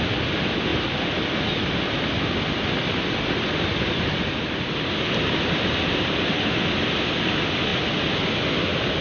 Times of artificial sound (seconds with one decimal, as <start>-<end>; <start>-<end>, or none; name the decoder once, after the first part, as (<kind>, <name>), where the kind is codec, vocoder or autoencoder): none